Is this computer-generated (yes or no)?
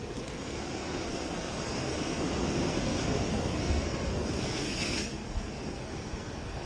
yes